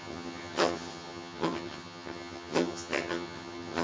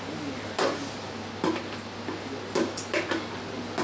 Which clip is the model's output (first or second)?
first